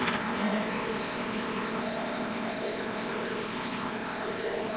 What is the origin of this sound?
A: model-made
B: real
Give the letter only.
A